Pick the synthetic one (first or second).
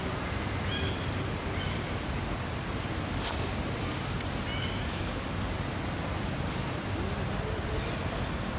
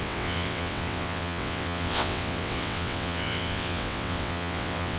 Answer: second